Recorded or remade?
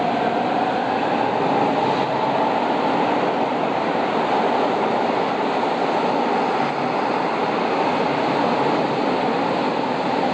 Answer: recorded